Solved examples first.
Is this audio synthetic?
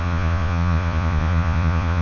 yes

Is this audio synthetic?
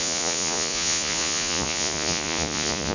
yes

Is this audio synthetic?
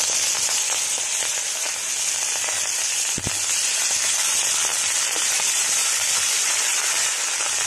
no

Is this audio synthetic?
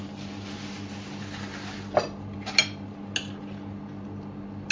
no